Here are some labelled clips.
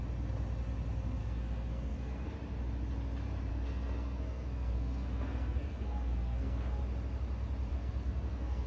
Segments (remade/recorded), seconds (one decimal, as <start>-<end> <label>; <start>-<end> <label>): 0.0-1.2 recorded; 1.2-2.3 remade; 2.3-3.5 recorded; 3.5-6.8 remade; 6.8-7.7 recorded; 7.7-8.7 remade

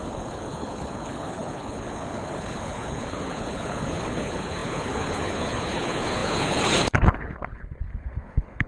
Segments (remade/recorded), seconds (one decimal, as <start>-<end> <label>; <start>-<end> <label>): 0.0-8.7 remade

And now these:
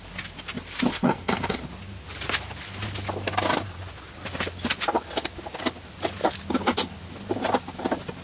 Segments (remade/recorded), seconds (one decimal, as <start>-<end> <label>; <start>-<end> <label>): 0.0-0.9 recorded; 0.9-1.6 remade; 1.6-8.2 recorded